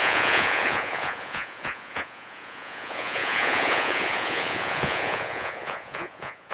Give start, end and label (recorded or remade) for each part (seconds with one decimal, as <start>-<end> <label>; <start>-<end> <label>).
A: 0.0-6.5 remade